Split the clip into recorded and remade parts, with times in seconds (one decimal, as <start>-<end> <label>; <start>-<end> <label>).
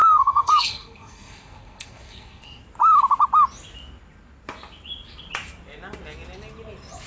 0.0-2.6 remade; 2.6-7.1 recorded